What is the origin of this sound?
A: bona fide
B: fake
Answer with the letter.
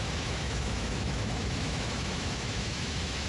B